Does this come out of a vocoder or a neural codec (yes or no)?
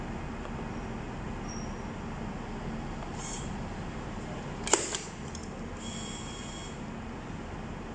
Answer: no